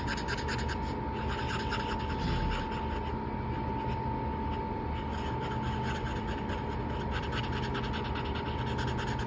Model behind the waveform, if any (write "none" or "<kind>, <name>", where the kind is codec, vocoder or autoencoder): none